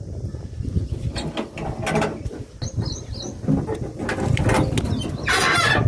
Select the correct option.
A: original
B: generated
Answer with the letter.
A